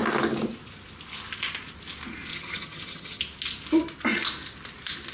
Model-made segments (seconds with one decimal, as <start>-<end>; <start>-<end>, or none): 2.3-3.2